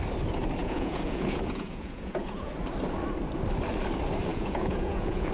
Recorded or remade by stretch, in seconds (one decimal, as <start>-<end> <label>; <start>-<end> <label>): 0.0-0.6 recorded; 0.6-2.5 remade; 2.5-4.3 recorded; 4.3-5.3 remade